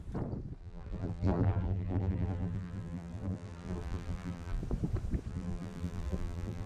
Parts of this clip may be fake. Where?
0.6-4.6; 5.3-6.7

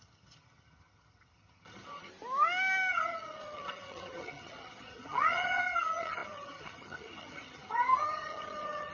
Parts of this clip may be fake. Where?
0.0-2.1; 2.9-8.9